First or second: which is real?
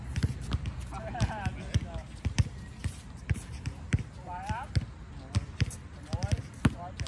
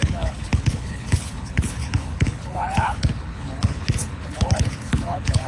first